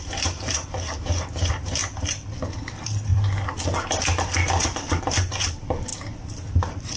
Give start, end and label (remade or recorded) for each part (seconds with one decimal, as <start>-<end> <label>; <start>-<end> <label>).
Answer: 0.0-1.8 remade; 1.8-2.5 recorded; 2.5-3.1 remade; 3.1-5.0 recorded; 5.0-5.9 remade; 5.9-6.6 recorded; 6.6-7.0 remade